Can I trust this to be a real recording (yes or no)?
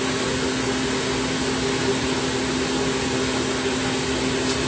yes